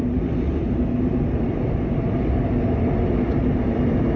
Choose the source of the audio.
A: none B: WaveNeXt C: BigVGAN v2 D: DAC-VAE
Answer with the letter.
A